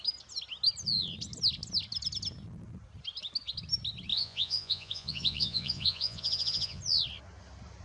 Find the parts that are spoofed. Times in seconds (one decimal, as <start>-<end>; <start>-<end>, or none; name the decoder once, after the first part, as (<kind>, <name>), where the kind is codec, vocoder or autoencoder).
4.1-6.8 (vocoder, Vocos)